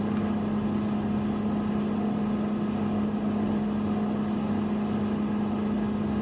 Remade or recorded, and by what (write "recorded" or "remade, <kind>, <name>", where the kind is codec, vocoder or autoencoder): recorded